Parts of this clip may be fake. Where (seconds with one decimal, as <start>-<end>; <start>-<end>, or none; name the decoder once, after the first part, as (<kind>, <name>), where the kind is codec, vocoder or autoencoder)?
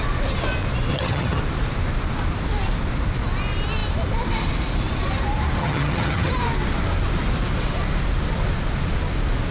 0.9-1.4 (vocoder, HiFi-GAN); 5.6-6.3